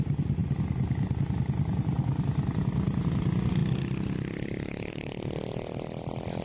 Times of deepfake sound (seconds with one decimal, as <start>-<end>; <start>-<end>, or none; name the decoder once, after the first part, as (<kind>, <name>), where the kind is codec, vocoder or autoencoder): none